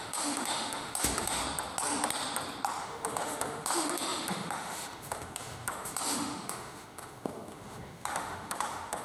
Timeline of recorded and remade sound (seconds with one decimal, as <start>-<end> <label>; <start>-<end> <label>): 0.0-1.4 remade; 1.4-2.8 recorded; 2.8-9.0 remade